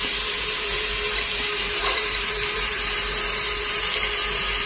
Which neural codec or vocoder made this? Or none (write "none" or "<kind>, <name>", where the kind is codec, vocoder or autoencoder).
vocoder, BigVGAN v2